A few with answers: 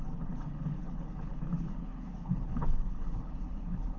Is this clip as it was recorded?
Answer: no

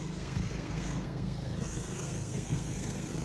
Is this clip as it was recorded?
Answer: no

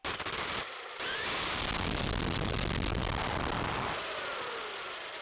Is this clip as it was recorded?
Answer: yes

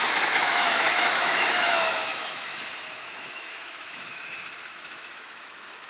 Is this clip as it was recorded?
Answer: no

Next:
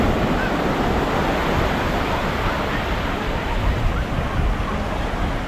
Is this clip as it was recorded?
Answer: yes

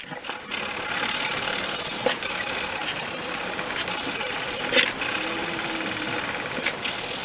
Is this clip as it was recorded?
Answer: yes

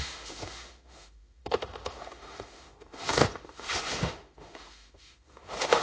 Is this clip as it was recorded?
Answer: no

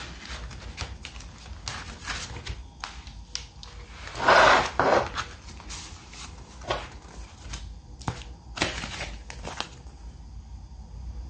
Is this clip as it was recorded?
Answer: yes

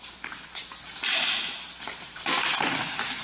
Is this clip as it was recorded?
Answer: yes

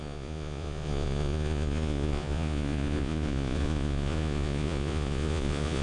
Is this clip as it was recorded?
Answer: no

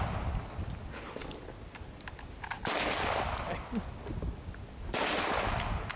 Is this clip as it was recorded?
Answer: yes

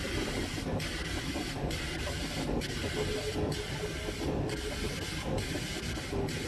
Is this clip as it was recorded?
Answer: no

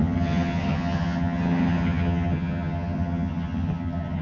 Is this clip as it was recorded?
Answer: no